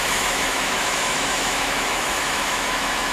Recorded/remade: remade